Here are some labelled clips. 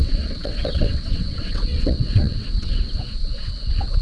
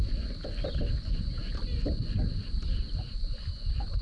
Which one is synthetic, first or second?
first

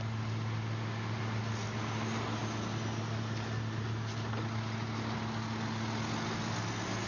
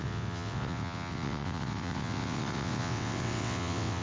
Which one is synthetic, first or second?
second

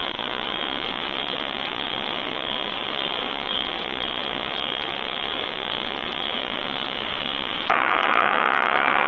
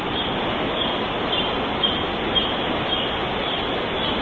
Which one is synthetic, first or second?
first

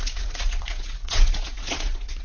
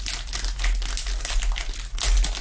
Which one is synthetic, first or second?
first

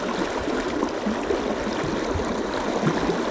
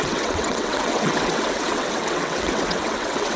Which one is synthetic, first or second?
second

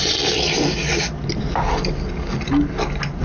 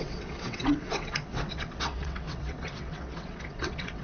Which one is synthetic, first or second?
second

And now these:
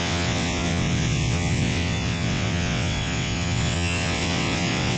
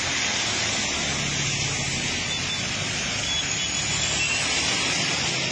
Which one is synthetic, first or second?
first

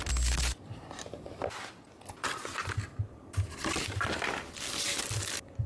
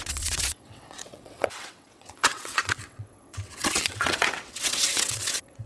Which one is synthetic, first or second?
second